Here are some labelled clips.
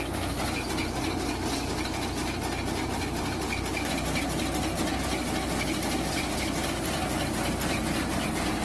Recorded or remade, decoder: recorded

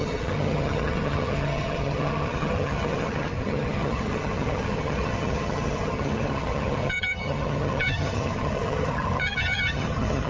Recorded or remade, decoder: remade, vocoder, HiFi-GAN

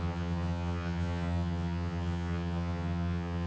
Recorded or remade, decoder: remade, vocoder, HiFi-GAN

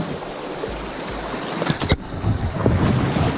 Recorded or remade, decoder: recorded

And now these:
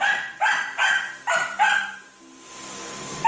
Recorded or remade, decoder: recorded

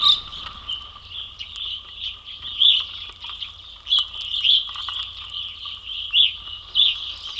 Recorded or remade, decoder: recorded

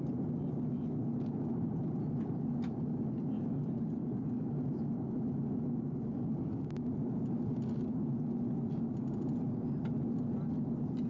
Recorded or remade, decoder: recorded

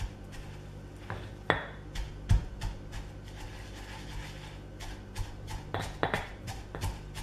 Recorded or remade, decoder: recorded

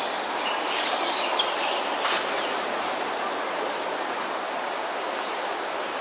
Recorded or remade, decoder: recorded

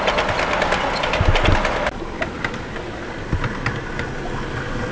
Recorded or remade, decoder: recorded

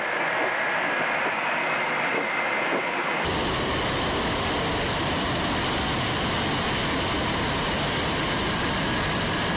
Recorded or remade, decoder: recorded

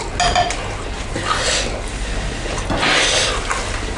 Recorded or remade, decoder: recorded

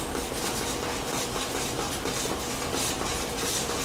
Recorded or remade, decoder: recorded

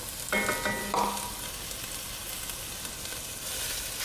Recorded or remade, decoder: recorded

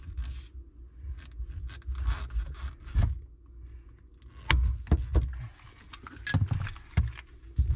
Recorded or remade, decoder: recorded